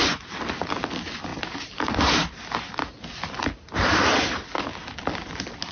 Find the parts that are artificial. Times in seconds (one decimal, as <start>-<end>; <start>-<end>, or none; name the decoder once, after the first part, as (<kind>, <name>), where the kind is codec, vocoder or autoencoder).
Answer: none